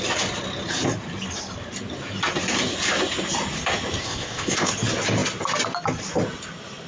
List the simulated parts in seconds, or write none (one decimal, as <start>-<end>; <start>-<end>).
4.0-4.7